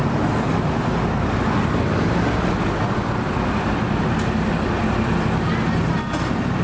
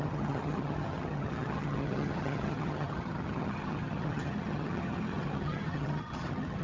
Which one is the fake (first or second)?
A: second